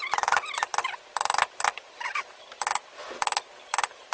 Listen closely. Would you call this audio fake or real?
fake